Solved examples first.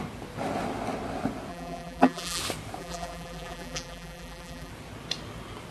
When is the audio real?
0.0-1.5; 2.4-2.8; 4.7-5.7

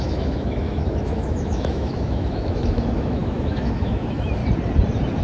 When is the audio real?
4.4-5.2

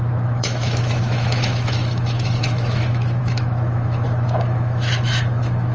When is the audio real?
none